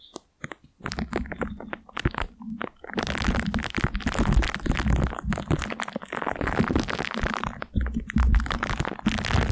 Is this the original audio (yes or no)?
yes